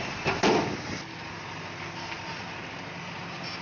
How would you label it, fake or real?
real